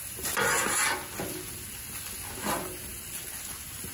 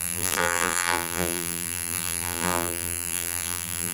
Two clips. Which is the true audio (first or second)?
first